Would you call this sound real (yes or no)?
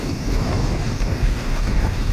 no